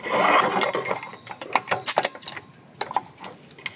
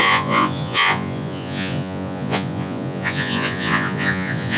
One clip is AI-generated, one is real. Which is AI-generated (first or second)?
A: second